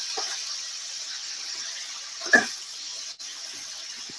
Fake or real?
fake